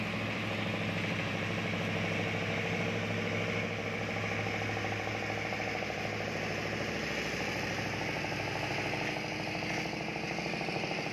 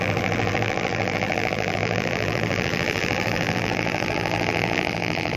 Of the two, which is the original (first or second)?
first